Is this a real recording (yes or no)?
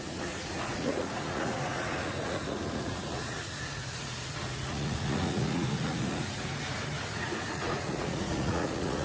no